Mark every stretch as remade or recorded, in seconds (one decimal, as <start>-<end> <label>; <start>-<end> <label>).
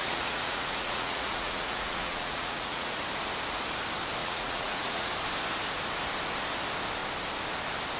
0.0-3.0 remade; 3.0-4.2 recorded; 4.2-5.1 remade; 5.1-8.0 recorded